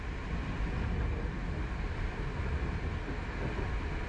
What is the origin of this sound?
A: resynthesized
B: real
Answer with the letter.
A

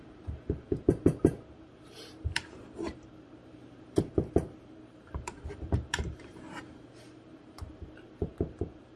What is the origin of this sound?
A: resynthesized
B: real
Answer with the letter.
A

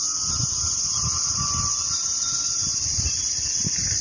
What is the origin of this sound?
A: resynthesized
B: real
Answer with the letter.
A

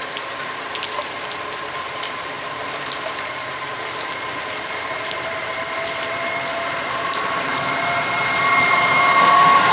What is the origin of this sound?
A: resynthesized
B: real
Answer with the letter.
A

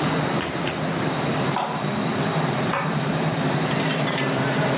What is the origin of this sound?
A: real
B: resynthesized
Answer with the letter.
B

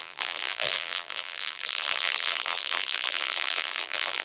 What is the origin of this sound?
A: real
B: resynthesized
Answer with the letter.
B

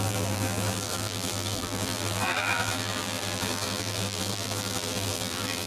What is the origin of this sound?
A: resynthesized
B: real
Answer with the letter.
A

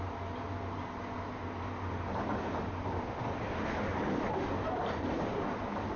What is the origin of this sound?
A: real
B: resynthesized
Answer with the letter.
A